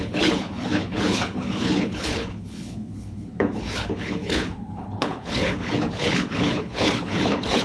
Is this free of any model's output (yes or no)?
no